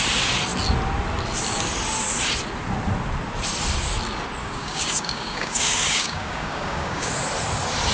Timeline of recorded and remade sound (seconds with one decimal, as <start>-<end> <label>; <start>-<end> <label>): 0.0-4.4 recorded; 4.4-7.1 remade; 7.1-7.9 recorded